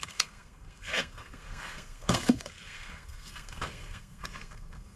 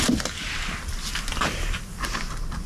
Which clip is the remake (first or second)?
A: first